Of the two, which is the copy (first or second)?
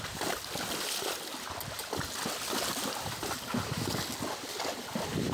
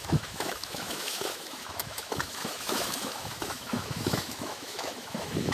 second